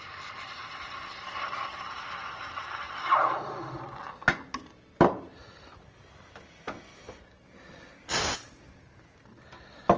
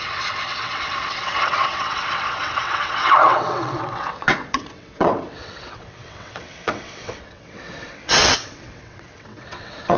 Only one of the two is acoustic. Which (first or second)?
first